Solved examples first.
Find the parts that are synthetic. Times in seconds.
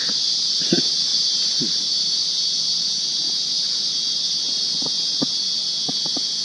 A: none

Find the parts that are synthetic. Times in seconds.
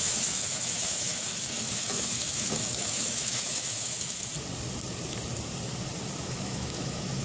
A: 0.0-4.3 (autoencoder, DAC-VAE); 6.2-7.2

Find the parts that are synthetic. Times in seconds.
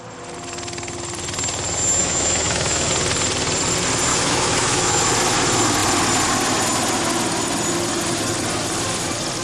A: 2.0-2.9 (autoencoder, DAC-VAE); 4.1-5.0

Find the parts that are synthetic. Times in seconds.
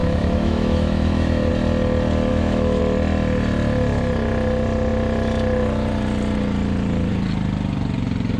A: 0.0-1.5 (autoencoder, DAC-VAE); 2.3-2.8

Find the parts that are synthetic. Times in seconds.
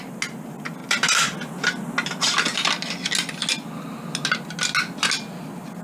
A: none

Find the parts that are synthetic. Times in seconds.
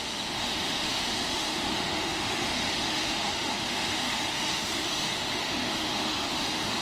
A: 0.0-6.8 (autoencoder, DAC-VAE)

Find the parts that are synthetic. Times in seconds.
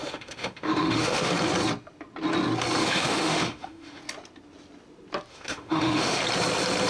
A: 0.0-1.3 (autoencoder, DAC-VAE); 2.8-4.0; 5.3-6.2